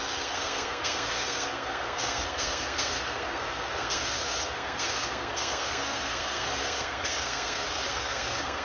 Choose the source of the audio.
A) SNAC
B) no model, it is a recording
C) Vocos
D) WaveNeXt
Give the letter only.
A